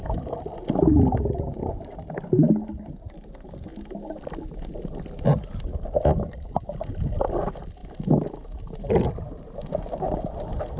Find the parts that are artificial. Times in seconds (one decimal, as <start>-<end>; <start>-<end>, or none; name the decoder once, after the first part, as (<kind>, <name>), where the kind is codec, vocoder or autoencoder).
none